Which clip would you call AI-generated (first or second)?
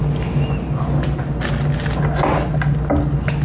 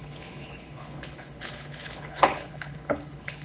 second